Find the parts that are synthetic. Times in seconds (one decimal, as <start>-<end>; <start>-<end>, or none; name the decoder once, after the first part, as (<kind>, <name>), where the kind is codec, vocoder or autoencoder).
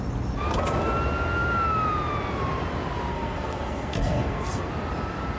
3.1-4.7 (codec, SNAC)